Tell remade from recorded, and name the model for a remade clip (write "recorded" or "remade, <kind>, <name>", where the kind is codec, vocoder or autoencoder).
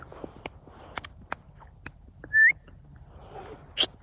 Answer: recorded